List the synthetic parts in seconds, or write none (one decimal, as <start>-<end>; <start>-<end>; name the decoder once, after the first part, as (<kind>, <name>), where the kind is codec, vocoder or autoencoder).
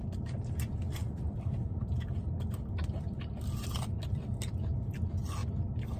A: 1.0-4.6 (vocoder, BigVGAN v2)